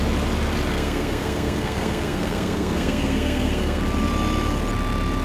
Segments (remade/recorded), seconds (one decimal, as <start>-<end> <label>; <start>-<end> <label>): 0.0-0.7 recorded; 0.7-3.8 remade; 3.8-5.2 recorded

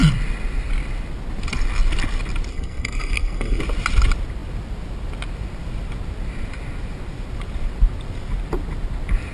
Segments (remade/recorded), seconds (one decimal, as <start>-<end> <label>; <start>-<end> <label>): 0.0-2.5 recorded; 2.5-3.6 remade; 3.6-9.3 recorded

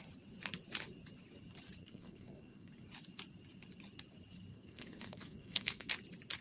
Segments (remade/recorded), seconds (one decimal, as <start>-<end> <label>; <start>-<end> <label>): 0.0-1.8 recorded; 1.8-2.7 remade; 2.7-4.5 recorded; 4.5-5.9 remade; 5.9-6.4 recorded

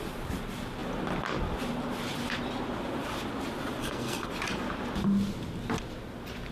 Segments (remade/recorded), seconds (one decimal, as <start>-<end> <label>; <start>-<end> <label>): 0.0-3.8 recorded; 3.8-4.3 remade; 4.3-6.5 recorded

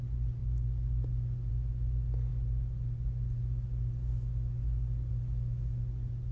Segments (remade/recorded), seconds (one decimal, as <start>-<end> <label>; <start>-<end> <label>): 0.0-6.3 recorded